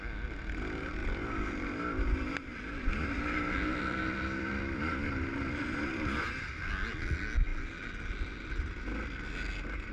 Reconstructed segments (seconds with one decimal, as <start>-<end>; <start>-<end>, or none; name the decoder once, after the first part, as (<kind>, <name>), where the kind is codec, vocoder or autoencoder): 3.7-6.7 (vocoder, BigVGAN v2)